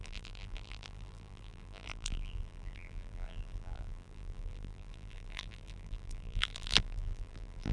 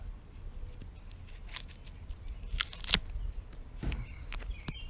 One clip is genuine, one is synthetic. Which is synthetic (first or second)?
first